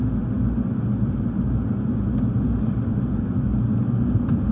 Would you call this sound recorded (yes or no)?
yes